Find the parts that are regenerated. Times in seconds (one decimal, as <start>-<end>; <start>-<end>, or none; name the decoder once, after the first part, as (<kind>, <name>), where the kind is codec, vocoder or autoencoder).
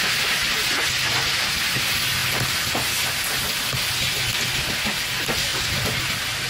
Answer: none